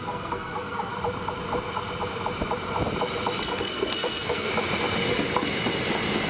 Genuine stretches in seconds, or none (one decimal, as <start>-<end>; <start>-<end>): 0.9-3.4; 4.5-6.3